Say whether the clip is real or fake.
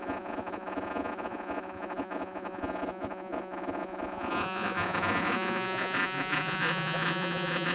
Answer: fake